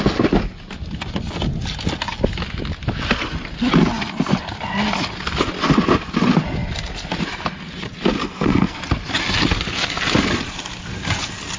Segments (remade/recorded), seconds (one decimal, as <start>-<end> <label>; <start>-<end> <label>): 0.0-8.2 recorded; 8.2-8.8 remade; 8.8-11.6 recorded